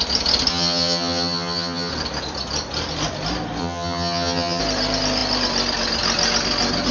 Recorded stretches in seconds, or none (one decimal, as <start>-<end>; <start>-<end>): 0.0-0.5; 1.9-3.6; 4.6-6.9